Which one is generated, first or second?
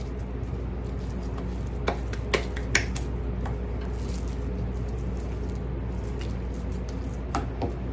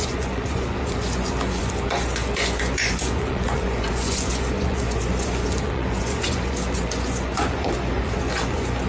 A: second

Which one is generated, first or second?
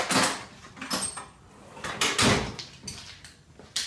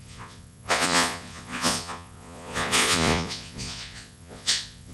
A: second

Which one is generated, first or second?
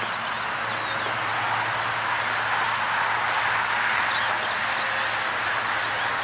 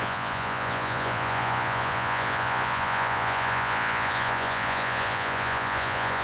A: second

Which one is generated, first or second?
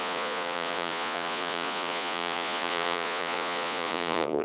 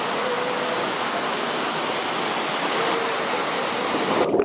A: first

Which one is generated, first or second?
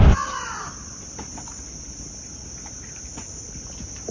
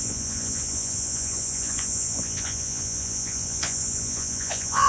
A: second